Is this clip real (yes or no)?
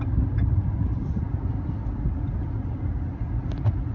yes